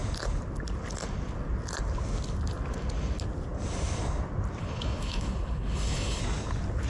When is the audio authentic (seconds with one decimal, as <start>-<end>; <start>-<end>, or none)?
0.0-4.6; 6.2-6.9